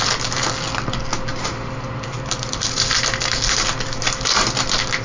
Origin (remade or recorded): recorded